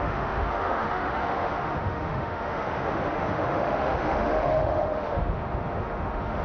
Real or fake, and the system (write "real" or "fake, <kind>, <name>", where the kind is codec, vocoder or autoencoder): fake, autoencoder, DAC-VAE